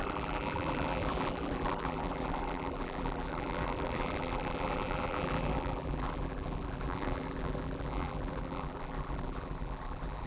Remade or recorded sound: remade